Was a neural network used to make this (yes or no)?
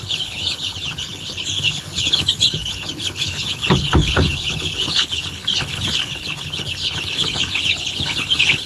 yes